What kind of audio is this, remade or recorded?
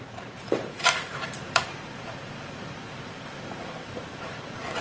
remade